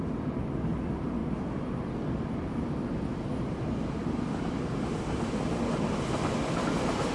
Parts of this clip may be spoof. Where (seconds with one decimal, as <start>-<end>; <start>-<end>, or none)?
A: none